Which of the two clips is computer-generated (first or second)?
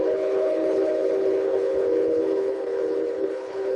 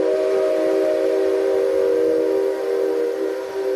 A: first